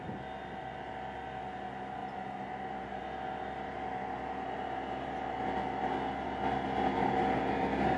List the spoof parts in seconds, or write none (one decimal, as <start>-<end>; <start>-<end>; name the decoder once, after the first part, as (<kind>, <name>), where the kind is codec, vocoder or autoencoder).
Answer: 2.0-3.0 (vocoder, BigVGAN v2)